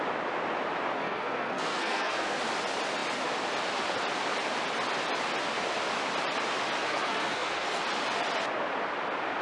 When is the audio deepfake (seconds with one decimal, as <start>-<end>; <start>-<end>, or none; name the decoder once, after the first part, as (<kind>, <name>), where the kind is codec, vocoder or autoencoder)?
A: 1.0-2.4 (codec, SNAC); 6.8-7.8

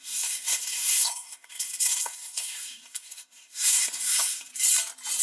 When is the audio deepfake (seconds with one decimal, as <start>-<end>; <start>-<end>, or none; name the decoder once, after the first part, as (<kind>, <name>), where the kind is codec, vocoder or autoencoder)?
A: 0.0-4.5 (codec, SNAC)